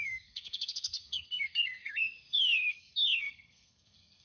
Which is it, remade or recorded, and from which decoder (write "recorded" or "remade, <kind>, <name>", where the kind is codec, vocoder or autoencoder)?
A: remade, codec, SNAC